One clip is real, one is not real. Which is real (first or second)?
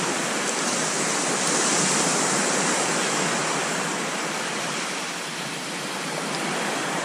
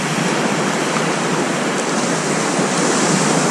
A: second